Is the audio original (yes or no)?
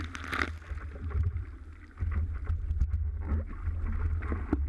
yes